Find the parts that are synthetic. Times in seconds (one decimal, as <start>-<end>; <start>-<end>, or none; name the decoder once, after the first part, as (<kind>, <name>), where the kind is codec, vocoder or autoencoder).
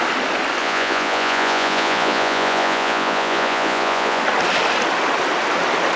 0.6-4.2 (vocoder, Vocos)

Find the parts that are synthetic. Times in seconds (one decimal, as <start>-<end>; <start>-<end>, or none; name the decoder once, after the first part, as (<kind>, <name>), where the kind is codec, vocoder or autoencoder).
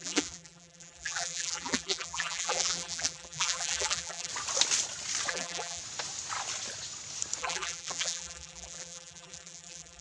0.0-4.3 (vocoder, BigVGAN v2); 5.3-5.8; 7.4-10.0